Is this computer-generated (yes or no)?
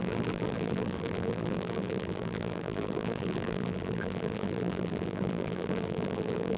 yes